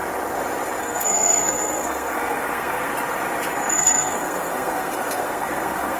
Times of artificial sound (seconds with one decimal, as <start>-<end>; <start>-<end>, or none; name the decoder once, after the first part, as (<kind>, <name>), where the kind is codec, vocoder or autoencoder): 0.8-2.9 (codec, SNAC); 3.7-6.0